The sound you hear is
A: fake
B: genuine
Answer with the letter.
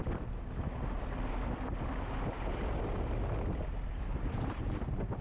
B